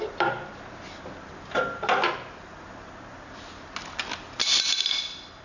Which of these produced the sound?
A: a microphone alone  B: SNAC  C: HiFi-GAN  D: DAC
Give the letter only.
A